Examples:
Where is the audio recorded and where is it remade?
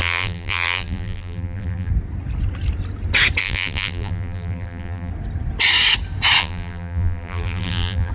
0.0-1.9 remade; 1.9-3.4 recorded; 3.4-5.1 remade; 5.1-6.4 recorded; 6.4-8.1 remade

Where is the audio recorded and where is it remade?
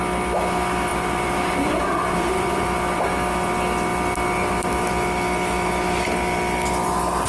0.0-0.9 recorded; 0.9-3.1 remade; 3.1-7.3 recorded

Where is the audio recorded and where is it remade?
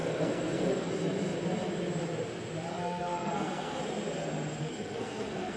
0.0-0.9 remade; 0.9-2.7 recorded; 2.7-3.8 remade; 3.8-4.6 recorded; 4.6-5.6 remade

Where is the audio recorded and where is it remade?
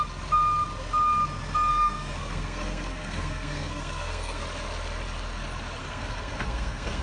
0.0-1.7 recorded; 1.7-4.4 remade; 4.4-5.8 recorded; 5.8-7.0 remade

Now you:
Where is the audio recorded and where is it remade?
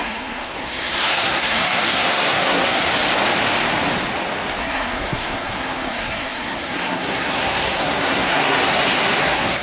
0.0-2.9 remade; 2.9-4.6 recorded; 4.6-9.6 remade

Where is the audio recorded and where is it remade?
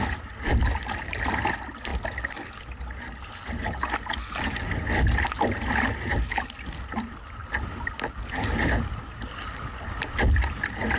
0.0-11.0 recorded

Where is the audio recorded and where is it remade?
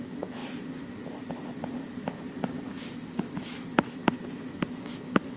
0.0-0.4 remade; 0.4-2.9 recorded; 2.9-4.0 remade; 4.0-4.7 recorded; 4.7-5.4 remade